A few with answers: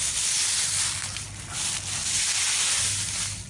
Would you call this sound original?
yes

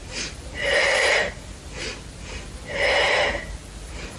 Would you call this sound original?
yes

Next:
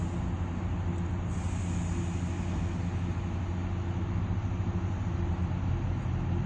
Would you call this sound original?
yes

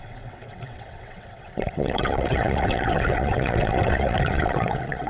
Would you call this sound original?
no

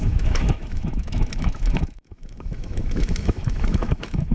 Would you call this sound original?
no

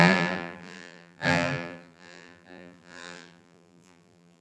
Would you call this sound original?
no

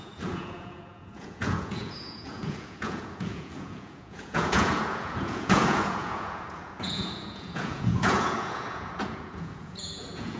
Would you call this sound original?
no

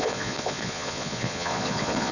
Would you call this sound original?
no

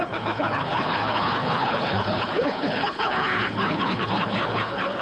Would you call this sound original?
no